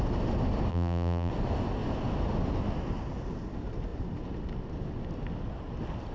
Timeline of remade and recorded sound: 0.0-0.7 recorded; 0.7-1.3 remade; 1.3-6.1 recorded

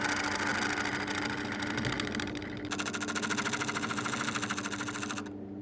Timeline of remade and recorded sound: 0.0-5.6 recorded

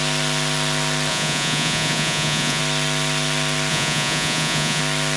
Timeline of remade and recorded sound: 0.0-1.1 recorded; 1.1-2.6 remade; 2.6-3.7 recorded; 3.7-4.8 remade; 4.8-5.2 recorded

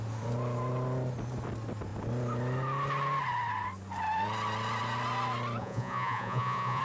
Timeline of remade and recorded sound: 0.0-5.6 recorded; 5.6-6.8 remade

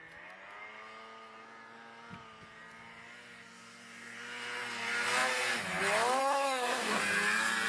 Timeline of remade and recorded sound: 0.0-6.2 recorded; 6.2-7.0 remade; 7.0-7.7 recorded

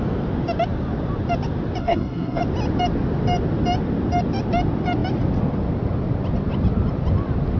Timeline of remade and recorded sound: 0.0-1.8 recorded; 1.8-2.4 remade; 2.4-7.6 recorded

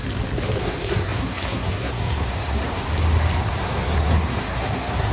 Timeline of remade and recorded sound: 0.0-0.6 recorded; 0.6-2.8 remade; 2.8-3.5 recorded; 3.5-5.1 remade

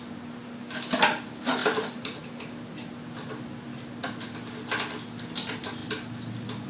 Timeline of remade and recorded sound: 0.0-6.7 recorded